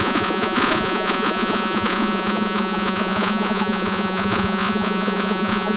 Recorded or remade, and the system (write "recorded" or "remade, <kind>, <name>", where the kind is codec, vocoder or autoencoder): remade, vocoder, Vocos